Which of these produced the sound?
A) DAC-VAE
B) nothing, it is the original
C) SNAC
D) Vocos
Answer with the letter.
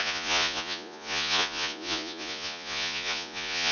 D